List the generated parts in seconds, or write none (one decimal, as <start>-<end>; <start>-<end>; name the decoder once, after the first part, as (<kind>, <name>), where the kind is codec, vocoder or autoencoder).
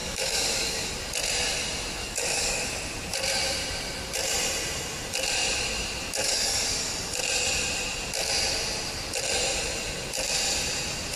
0.0-0.9 (codec, DAC); 2.0-2.7; 6.2-6.9